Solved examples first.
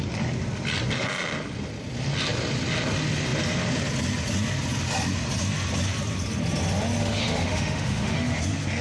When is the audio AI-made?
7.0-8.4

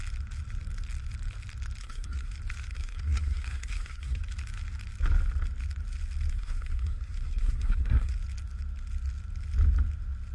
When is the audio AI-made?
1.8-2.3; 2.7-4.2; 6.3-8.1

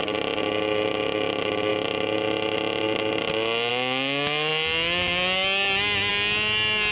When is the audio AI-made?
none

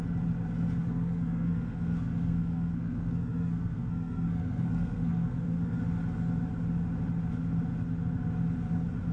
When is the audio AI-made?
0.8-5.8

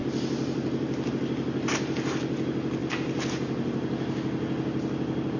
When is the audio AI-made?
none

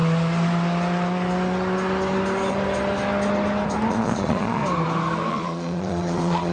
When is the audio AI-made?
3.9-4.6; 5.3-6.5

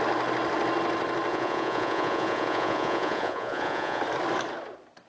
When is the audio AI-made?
1.3-4.0

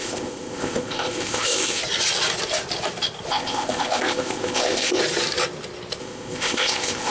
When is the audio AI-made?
0.0-1.8; 3.3-5.0; 6.0-7.1